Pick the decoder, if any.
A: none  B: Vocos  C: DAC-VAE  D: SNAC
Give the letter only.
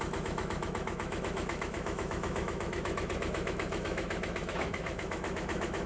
C